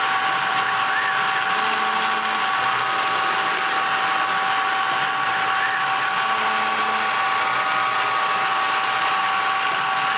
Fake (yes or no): no